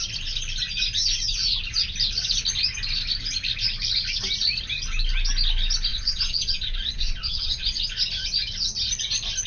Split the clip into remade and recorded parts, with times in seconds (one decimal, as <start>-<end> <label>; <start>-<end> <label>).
0.0-5.9 recorded; 5.9-7.8 remade; 7.8-9.5 recorded